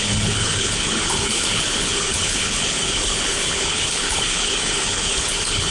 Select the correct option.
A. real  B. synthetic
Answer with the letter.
B